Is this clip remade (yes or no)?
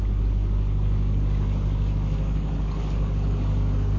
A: yes